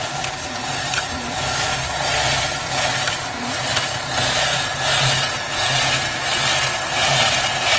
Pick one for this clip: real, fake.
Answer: real